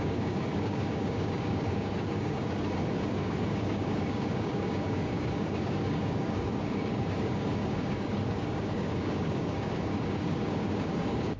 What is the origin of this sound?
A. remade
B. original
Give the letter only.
A